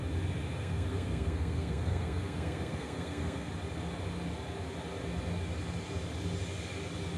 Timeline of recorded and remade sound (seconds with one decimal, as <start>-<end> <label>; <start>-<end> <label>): 0.0-0.6 recorded; 0.6-3.5 remade; 3.5-7.2 recorded